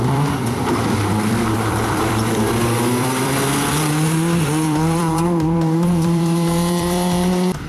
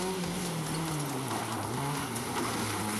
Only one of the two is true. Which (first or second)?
second